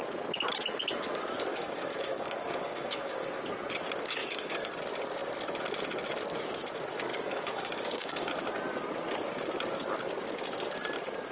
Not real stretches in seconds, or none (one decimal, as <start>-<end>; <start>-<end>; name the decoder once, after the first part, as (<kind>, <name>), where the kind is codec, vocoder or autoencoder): 1.5-3.4 (codec, DAC); 4.2-4.8; 7.1-8.3